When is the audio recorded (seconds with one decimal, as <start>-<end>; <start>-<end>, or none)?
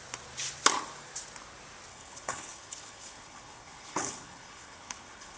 0.0-1.9